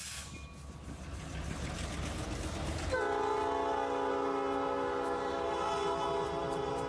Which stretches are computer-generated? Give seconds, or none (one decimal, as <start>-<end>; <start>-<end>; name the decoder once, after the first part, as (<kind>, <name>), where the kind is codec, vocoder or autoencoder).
none